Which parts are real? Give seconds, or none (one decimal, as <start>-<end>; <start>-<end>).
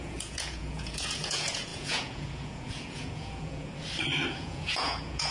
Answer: 3.7-4.3